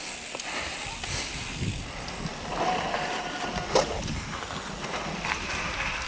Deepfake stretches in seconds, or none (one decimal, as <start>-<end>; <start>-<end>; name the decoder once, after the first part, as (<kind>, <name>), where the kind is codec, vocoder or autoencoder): none